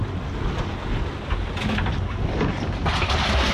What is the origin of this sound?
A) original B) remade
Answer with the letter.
A